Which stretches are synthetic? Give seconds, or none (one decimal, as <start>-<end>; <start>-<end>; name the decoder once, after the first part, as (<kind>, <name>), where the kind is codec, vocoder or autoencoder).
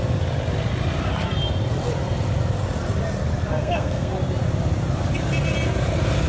3.5-4.1 (codec, SNAC)